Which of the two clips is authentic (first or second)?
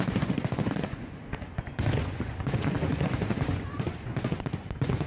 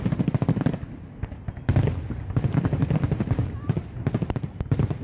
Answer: second